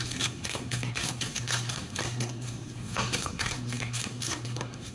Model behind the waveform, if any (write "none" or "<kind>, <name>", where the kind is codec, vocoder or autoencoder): codec, SNAC